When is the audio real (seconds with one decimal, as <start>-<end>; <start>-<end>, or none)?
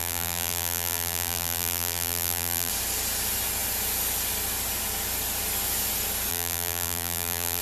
2.7-6.3